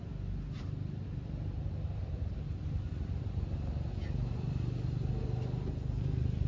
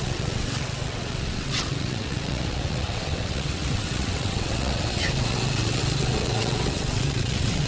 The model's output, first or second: second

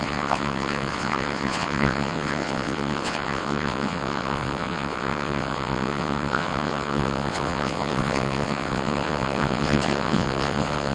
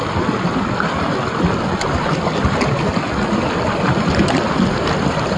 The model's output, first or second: first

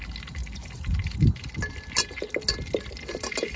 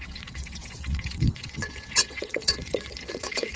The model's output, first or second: second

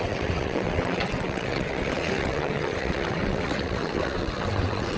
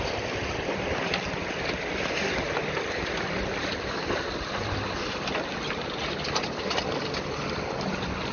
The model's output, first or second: first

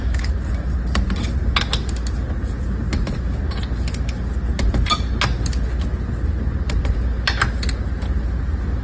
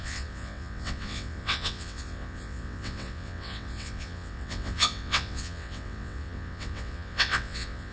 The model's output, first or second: second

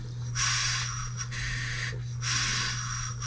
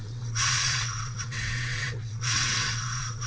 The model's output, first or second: second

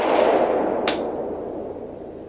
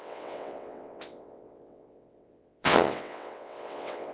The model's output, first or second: second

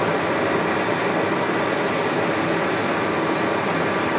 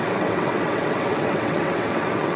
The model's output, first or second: second